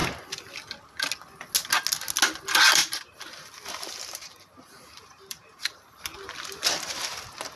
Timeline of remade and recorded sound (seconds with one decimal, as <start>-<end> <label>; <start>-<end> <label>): 0.0-2.8 recorded; 2.8-6.0 remade; 6.0-7.6 recorded